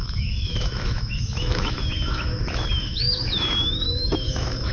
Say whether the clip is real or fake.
fake